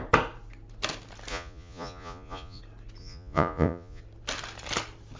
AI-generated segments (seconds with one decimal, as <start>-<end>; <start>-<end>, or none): 1.3-2.6; 3.0-4.0